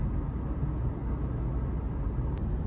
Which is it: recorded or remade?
recorded